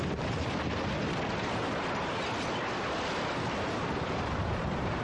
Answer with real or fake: real